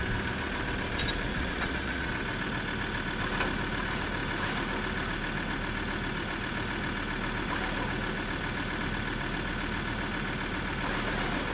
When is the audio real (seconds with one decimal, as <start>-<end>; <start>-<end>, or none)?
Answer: 0.0-1.3; 2.1-11.5